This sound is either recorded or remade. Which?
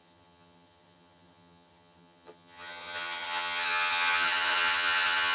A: remade